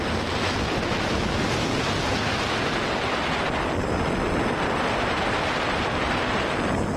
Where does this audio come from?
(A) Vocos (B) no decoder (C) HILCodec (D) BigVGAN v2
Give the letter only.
B